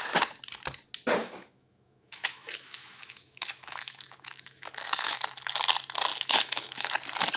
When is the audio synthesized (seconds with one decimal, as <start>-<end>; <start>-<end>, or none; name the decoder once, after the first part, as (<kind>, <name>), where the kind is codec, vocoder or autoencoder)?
1.2-5.2 (autoencoder, DAC-VAE); 6.1-6.9